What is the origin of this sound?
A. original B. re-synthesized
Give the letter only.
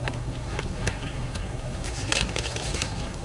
B